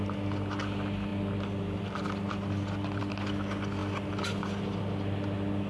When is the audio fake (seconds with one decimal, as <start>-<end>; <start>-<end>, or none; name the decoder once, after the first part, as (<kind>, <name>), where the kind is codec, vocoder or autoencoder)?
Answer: none